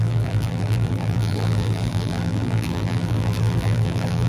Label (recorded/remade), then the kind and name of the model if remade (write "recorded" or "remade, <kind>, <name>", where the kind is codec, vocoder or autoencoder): remade, vocoder, BigVGAN v2